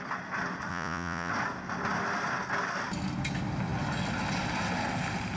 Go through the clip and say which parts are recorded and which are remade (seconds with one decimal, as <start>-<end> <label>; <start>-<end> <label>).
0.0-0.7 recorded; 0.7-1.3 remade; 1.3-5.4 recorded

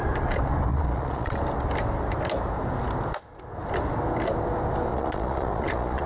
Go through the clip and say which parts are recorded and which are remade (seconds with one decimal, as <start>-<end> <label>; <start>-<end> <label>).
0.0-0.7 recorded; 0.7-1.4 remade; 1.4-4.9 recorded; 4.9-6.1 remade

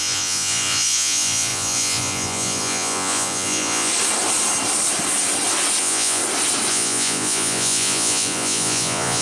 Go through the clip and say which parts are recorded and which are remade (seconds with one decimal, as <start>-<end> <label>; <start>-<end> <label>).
0.0-3.9 remade; 3.9-5.8 recorded; 5.8-6.2 remade; 6.2-6.7 recorded; 6.7-9.2 remade

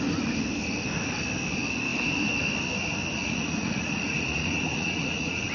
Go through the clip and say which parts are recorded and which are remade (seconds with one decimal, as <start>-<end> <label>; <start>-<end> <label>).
0.0-3.2 recorded; 3.2-5.5 remade

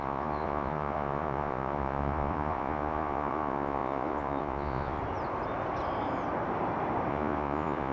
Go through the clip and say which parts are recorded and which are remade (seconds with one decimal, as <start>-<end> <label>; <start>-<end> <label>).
0.0-5.0 remade; 5.0-7.1 recorded; 7.1-7.9 remade

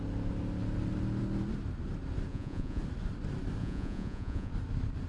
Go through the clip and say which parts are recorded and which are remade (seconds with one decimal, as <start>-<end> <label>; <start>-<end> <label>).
0.0-2.3 recorded; 2.3-2.8 remade; 2.8-3.6 recorded; 3.6-4.5 remade; 4.5-5.1 recorded